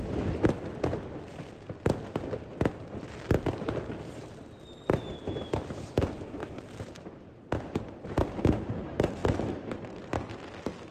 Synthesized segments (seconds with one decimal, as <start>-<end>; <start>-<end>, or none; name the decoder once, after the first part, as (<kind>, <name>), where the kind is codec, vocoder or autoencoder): 0.7-3.9 (vocoder, BigVGAN v2)